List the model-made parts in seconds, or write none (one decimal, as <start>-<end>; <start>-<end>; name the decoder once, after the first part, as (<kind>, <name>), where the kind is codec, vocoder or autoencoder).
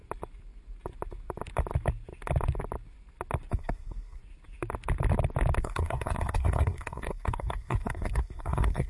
3.5-4.2 (codec, SNAC); 5.6-8.9